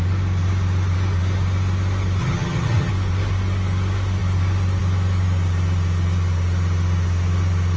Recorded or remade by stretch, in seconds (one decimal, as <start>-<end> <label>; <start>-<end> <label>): 0.0-2.2 recorded; 2.2-2.9 remade; 2.9-7.8 recorded